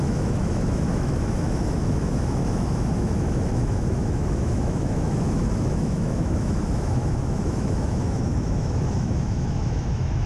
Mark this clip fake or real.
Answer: fake